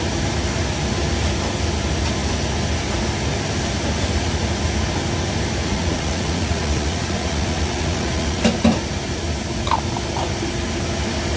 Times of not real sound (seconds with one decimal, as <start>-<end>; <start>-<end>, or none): 5.6-8.4